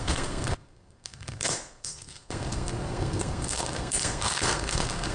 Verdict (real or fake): fake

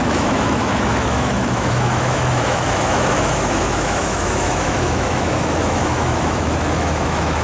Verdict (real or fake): fake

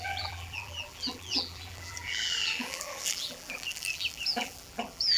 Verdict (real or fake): fake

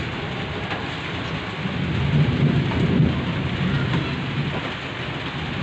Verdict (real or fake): real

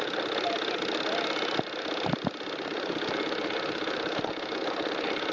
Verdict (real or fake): real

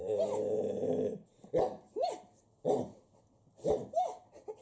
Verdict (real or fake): real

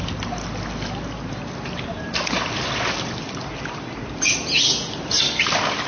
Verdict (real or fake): real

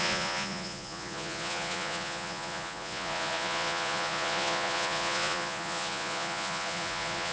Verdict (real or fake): fake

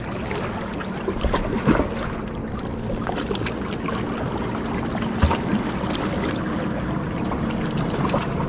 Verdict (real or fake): real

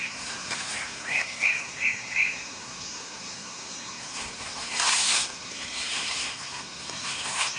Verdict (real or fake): fake